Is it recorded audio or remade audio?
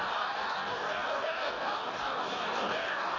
remade